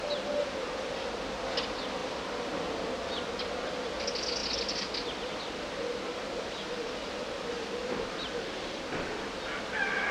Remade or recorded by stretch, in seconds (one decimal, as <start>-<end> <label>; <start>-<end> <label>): 0.0-7.8 recorded; 7.8-8.5 remade; 8.5-10.1 recorded